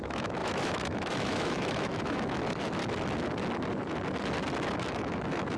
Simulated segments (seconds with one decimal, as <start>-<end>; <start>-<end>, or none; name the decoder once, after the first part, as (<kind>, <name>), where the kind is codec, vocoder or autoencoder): 0.0-2.8 (autoencoder, DAC-VAE); 4.7-5.6

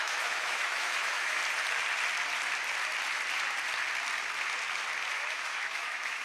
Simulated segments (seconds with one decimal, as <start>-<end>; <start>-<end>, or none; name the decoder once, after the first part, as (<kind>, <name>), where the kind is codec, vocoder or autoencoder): 0.0-1.4 (autoencoder, DAC-VAE); 5.1-6.2

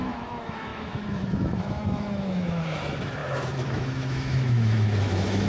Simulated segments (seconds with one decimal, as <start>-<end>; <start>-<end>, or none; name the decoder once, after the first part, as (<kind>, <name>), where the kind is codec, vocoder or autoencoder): 0.0-5.5 (autoencoder, DAC-VAE)

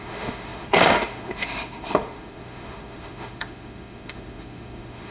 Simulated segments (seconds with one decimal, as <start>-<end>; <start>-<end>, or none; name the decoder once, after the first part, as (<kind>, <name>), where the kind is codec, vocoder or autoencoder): 0.0-5.1 (autoencoder, DAC-VAE)

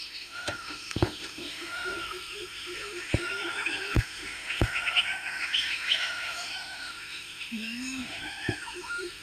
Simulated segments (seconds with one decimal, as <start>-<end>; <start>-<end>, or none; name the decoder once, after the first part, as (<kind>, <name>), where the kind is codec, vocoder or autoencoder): 0.0-9.2 (autoencoder, DAC-VAE)

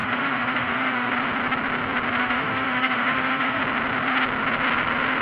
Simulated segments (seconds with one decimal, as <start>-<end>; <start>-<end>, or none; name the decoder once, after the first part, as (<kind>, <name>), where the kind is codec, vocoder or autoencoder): 0.0-1.1 (autoencoder, DAC-VAE); 2.2-3.6